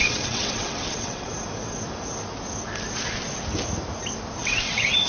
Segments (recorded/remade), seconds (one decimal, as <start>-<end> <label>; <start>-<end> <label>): 0.0-1.3 remade; 1.3-4.4 recorded; 4.4-5.1 remade